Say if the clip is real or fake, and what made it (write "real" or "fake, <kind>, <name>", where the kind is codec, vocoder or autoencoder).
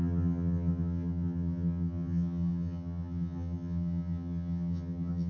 fake, vocoder, HiFi-GAN